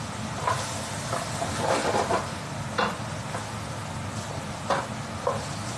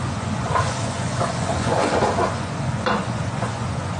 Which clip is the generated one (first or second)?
second